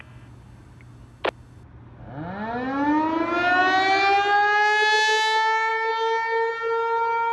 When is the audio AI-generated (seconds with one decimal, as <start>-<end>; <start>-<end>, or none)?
none